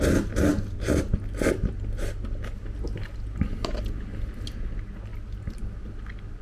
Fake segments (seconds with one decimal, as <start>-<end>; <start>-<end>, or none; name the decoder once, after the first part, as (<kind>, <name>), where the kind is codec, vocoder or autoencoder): none